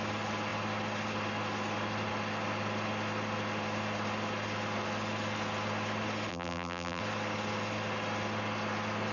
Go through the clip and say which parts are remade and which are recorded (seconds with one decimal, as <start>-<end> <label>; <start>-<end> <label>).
0.0-6.3 recorded; 6.3-7.0 remade; 7.0-9.1 recorded